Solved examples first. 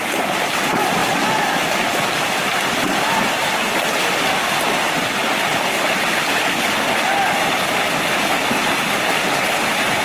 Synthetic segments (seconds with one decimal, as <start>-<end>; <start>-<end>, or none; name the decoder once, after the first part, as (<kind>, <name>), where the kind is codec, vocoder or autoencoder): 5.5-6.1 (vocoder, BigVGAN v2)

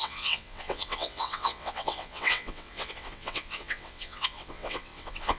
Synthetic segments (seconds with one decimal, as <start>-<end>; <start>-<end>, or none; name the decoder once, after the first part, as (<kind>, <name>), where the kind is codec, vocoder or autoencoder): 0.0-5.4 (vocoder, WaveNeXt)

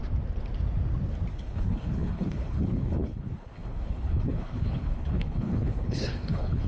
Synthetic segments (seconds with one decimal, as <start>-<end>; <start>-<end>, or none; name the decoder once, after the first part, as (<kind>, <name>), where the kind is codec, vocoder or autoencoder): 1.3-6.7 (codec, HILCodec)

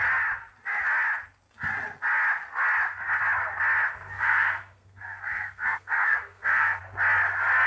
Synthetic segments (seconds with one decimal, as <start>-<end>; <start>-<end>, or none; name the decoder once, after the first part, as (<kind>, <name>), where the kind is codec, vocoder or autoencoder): 3.9-6.8 (codec, SNAC)

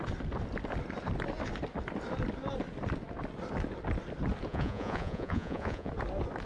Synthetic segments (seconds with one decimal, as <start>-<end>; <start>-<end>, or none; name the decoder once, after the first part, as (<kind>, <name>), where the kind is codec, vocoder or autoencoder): 4.5-5.9 (vocoder, Vocos)

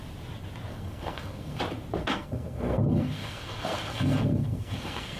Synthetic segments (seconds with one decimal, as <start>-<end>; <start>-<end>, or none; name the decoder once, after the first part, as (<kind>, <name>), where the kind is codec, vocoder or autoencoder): 0.7-1.6 (codec, SNAC); 2.0-5.2

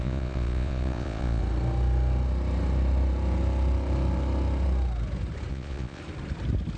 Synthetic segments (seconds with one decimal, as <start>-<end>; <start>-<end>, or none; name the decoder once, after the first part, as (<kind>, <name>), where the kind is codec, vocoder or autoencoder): 0.0-1.4 (vocoder, Vocos); 5.5-6.0

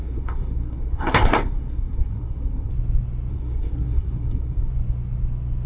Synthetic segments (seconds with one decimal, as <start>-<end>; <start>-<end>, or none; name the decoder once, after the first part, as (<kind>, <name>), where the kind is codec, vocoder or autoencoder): 0.0-2.7 (codec, SNAC); 3.3-4.7